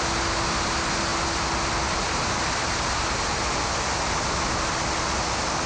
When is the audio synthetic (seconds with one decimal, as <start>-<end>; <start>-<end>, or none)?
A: none